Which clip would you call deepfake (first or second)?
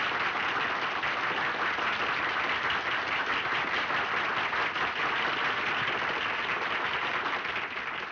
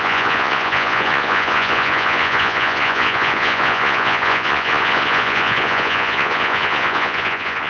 second